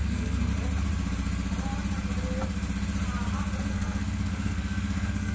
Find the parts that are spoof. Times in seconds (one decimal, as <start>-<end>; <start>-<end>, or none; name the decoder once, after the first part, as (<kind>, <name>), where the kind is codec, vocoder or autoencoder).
0.0-0.5 (codec, SNAC); 3.7-5.3